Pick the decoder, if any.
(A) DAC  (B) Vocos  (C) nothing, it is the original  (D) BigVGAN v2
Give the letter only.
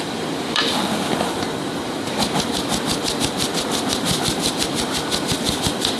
D